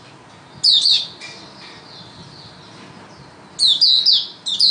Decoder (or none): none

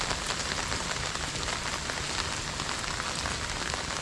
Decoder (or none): none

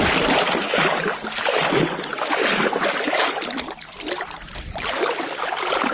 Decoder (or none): none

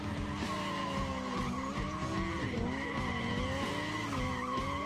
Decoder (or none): none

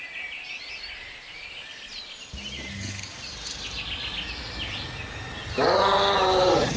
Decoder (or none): none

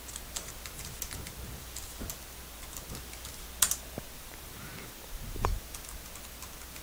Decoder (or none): none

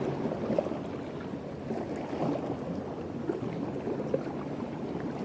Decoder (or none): none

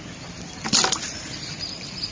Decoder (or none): vocoder, BigVGAN v2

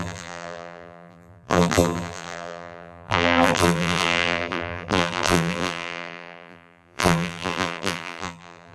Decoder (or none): vocoder, BigVGAN v2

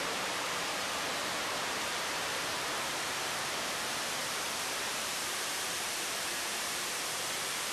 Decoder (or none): vocoder, BigVGAN v2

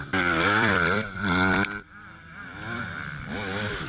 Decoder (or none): vocoder, BigVGAN v2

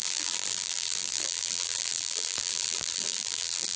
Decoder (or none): vocoder, BigVGAN v2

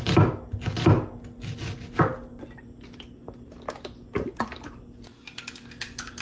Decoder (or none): none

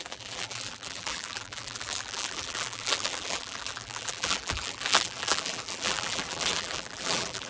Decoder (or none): vocoder, BigVGAN v2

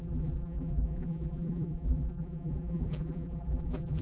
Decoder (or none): vocoder, BigVGAN v2